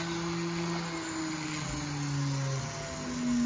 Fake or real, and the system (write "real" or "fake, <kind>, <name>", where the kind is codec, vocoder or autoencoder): real